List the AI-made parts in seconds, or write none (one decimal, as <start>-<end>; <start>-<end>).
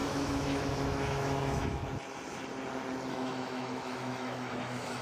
0.0-1.8; 3.1-5.0